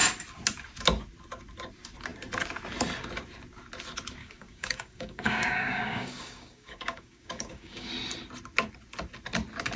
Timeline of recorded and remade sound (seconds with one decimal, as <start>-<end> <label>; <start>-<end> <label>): 0.0-4.2 recorded; 4.2-7.9 remade; 7.9-9.8 recorded